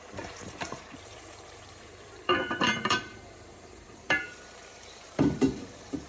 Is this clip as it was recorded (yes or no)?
no